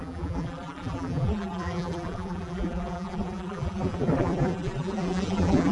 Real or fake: fake